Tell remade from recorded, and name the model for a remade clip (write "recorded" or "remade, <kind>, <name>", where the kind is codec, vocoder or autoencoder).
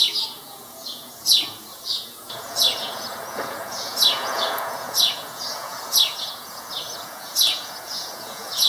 remade, vocoder, Vocos